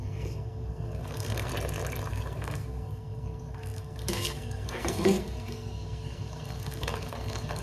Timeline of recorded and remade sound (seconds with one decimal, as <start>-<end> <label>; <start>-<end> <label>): 0.0-1.5 remade; 1.5-2.1 recorded; 2.1-7.6 remade